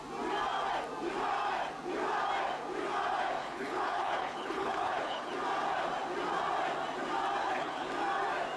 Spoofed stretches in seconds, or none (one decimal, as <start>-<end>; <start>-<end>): 3.4-5.3; 7.4-7.9